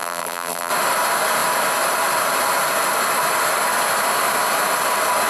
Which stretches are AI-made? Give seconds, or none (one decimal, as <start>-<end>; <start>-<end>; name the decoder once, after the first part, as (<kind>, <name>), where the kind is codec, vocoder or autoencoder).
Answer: 0.0-0.7 (vocoder, BigVGAN v2)